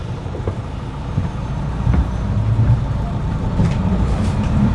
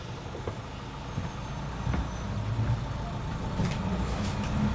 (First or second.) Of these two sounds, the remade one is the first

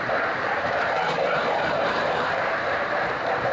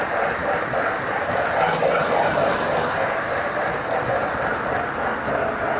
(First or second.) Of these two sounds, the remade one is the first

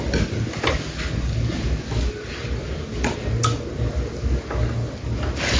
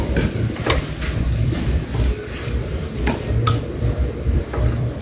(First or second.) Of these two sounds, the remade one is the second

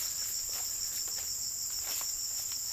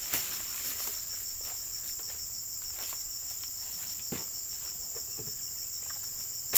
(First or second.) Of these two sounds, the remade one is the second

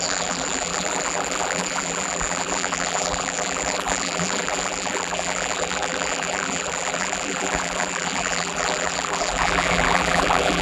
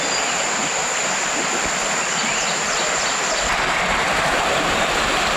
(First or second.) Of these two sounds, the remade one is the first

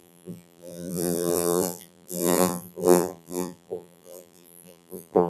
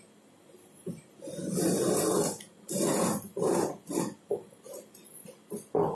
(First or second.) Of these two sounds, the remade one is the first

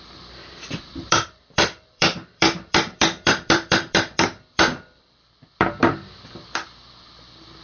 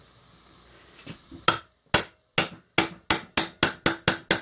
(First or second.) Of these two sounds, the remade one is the first